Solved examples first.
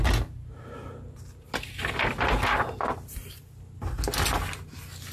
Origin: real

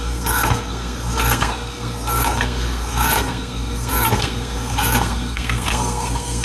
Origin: fake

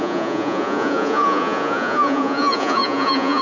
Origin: fake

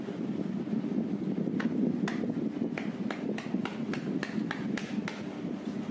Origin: real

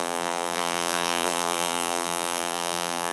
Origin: fake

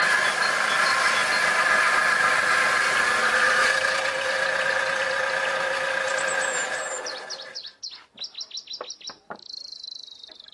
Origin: real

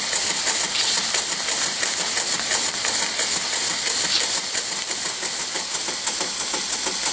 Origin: real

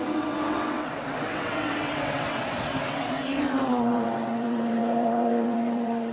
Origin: fake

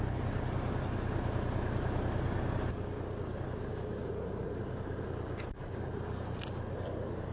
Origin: real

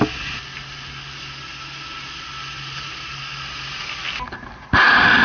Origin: real